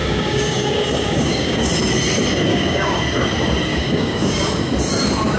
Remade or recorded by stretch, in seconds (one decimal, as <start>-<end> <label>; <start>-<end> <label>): 0.0-1.7 remade; 1.7-2.5 recorded; 2.5-3.0 remade; 3.0-3.7 recorded; 3.7-4.5 remade; 4.5-5.4 recorded